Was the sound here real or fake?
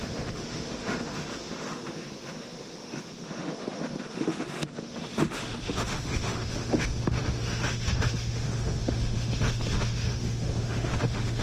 fake